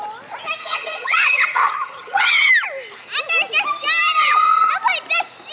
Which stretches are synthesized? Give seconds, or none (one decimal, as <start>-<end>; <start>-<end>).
0.6-2.5; 4.2-4.7